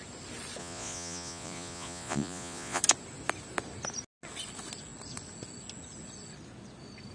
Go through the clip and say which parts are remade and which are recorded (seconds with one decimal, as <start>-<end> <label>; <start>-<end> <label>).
0.0-0.6 recorded; 0.6-2.8 remade; 2.8-7.1 recorded